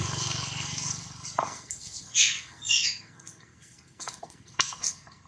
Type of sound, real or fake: fake